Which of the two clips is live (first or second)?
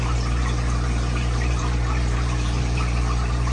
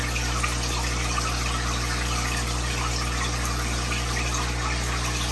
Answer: second